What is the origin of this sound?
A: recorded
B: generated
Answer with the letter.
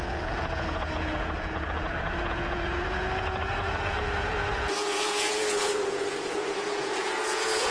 B